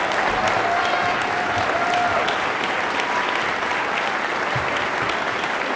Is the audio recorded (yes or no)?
yes